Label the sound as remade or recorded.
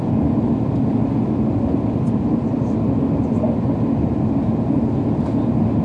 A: recorded